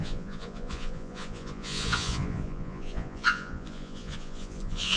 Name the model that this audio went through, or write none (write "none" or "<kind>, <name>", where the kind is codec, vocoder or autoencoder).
vocoder, Vocos